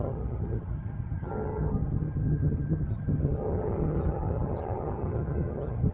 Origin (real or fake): fake